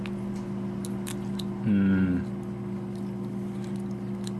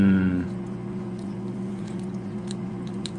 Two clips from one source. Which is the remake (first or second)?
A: second